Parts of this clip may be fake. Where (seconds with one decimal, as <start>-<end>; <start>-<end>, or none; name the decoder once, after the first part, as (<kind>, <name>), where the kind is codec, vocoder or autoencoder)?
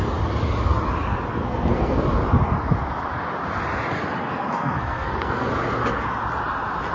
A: 1.3-2.0 (codec, SNAC); 4.2-5.5